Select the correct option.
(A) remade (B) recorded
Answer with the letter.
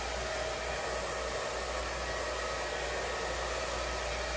B